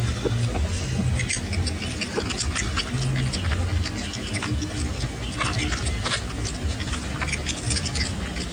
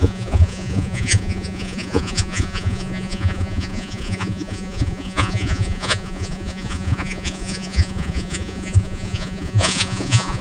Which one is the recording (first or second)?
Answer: first